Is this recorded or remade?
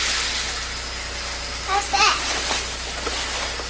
recorded